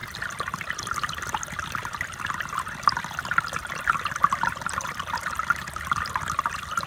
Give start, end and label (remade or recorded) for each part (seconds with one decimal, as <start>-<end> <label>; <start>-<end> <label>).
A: 0.0-6.9 recorded